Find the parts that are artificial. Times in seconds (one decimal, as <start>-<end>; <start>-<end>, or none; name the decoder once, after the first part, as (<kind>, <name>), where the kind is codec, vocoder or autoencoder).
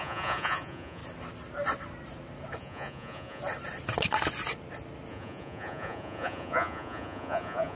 0.0-1.0 (vocoder, Vocos); 2.6-3.4; 5.1-7.8